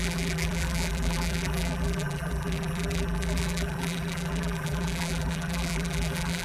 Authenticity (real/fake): fake